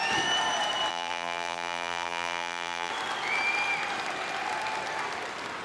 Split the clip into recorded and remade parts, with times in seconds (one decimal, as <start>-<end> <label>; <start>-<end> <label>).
0.0-0.9 recorded; 0.9-2.9 remade; 2.9-5.6 recorded